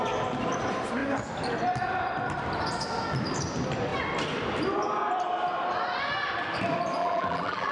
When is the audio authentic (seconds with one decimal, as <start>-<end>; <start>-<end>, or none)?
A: 0.0-7.0